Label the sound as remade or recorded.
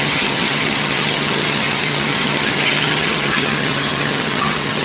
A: remade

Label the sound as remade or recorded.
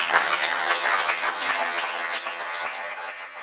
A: remade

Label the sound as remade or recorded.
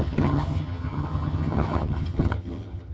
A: remade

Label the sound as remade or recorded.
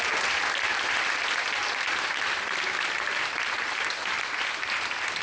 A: recorded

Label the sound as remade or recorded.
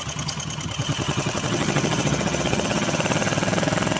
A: remade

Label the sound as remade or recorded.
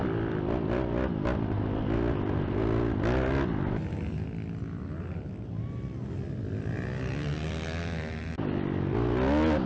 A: recorded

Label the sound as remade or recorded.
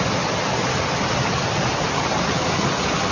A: recorded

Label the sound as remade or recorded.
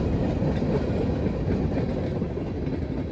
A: recorded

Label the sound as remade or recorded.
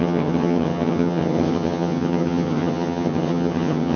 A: remade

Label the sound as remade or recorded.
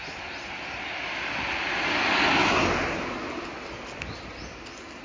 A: recorded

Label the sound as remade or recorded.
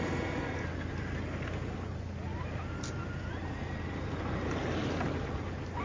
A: recorded